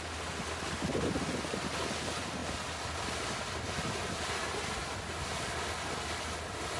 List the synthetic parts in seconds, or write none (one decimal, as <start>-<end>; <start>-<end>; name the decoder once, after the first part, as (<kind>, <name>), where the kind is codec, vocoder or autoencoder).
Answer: none